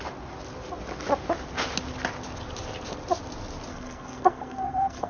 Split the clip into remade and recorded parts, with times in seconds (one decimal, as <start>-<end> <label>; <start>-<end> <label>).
0.0-3.7 recorded; 3.7-5.1 remade